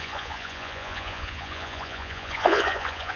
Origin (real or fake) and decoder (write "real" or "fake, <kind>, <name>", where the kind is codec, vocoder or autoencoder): fake, vocoder, Vocos